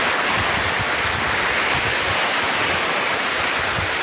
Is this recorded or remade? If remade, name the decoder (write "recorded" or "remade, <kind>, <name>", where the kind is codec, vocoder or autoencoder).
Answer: recorded